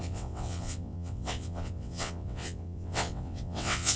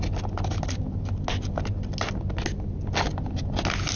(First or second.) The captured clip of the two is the second